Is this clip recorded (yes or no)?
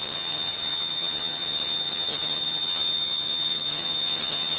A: no